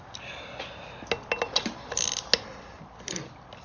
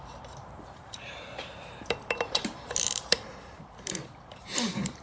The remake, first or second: second